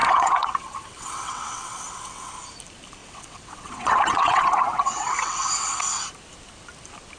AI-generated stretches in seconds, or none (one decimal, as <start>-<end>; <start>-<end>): 0.0-2.3; 3.0-6.0